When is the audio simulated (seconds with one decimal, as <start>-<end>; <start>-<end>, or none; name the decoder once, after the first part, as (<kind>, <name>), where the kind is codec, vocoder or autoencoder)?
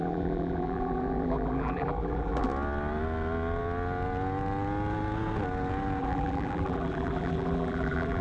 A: 0.0-2.5 (vocoder, BigVGAN v2); 6.0-8.2